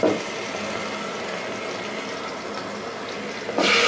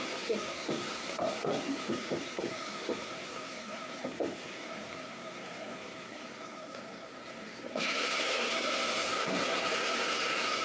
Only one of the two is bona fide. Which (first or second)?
first